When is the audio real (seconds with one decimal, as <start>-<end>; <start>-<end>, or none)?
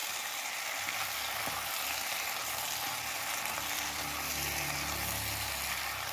3.7-6.1